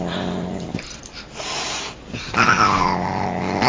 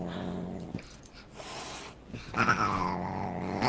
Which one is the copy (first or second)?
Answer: first